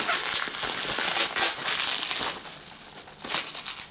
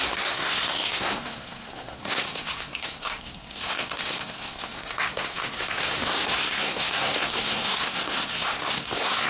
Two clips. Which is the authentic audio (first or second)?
first